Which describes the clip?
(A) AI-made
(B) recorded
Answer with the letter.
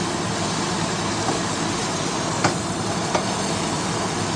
B